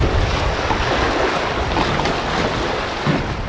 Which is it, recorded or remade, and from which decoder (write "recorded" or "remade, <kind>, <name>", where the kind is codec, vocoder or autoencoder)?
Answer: recorded